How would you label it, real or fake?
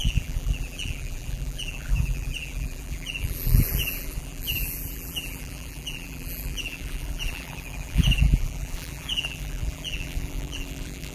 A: fake